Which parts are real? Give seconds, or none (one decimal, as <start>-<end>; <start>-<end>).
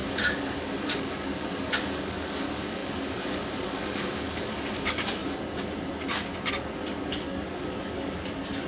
5.2-6.5